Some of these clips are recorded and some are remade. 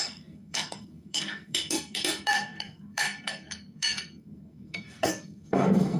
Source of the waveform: remade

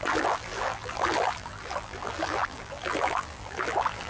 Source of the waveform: remade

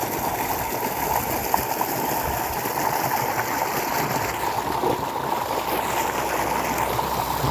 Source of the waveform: recorded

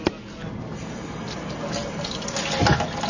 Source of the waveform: recorded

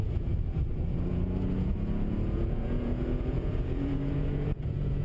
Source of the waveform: remade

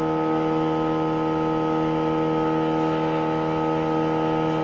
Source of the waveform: recorded